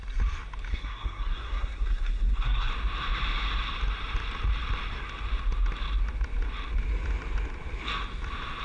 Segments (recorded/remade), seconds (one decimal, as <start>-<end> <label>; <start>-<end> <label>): 0.0-0.7 recorded; 0.7-2.7 remade; 2.7-8.6 recorded